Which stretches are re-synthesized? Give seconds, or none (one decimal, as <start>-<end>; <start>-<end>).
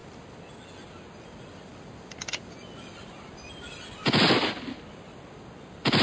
none